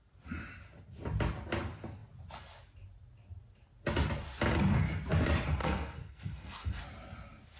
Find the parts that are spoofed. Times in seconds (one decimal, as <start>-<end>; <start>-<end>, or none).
5.6-6.8